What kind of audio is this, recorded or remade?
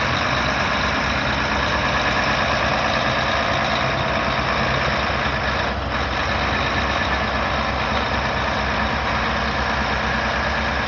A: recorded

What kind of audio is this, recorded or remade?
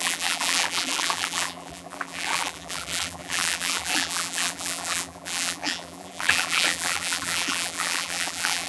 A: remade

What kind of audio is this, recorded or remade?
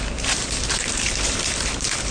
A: remade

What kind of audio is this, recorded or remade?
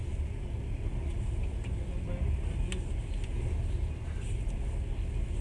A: recorded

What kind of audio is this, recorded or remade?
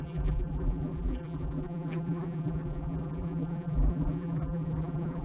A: remade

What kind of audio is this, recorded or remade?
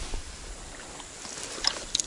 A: recorded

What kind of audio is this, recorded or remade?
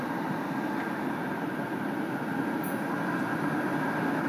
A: recorded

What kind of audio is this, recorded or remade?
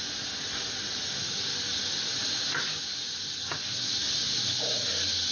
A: recorded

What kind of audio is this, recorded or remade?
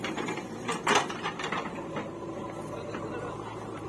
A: remade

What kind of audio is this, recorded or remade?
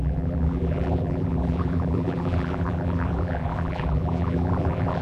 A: remade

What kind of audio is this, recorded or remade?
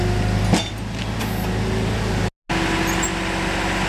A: recorded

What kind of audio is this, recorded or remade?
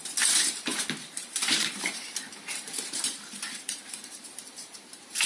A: remade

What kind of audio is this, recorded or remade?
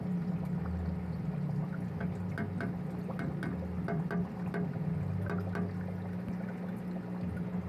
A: recorded